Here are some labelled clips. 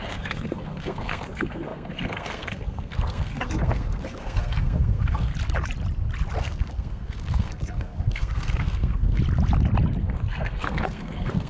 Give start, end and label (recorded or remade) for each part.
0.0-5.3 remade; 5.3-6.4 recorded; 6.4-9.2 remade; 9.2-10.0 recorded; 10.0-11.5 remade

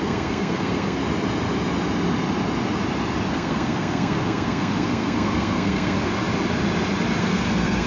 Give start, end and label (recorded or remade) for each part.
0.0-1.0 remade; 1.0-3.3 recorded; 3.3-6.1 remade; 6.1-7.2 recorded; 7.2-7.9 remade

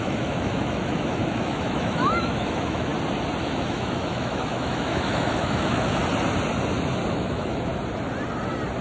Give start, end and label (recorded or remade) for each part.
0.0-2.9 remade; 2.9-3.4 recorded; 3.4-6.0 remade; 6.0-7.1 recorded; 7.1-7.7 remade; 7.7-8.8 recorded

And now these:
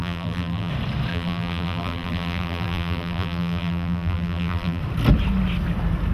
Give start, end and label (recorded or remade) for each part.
0.0-0.7 remade; 0.7-1.1 recorded; 1.1-4.8 remade; 4.8-6.1 recorded

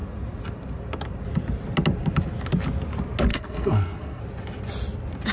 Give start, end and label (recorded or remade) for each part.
0.0-3.3 recorded; 3.3-4.2 remade; 4.2-5.3 recorded

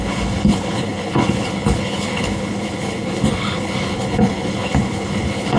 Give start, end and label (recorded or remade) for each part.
0.0-5.6 remade

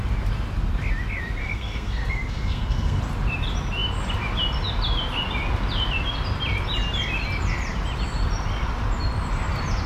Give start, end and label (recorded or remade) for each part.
0.0-1.4 recorded; 1.4-3.0 remade; 3.0-9.9 recorded

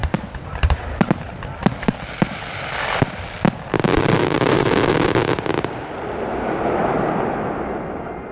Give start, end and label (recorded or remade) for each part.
0.0-0.9 remade; 0.9-3.9 recorded; 3.9-4.7 remade; 4.7-8.3 recorded